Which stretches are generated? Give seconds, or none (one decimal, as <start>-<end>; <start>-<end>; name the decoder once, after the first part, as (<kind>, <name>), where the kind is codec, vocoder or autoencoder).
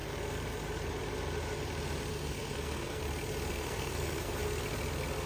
2.1-3.0 (codec, SNAC); 3.5-4.4